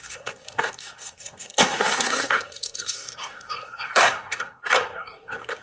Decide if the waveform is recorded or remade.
remade